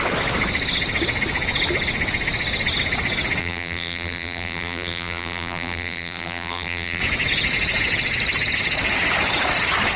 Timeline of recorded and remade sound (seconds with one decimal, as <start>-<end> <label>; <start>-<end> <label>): 0.0-3.4 recorded; 3.4-7.0 remade; 7.0-10.0 recorded